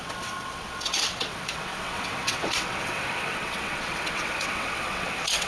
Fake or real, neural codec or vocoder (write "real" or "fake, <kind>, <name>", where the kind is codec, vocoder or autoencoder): fake, vocoder, WaveNeXt